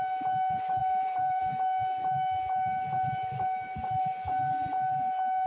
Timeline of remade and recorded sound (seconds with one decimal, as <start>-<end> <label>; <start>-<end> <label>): 0.0-0.8 recorded; 0.8-1.4 remade; 1.4-5.5 recorded